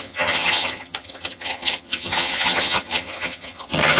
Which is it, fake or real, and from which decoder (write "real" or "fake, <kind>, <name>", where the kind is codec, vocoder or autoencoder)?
fake, vocoder, HiFi-GAN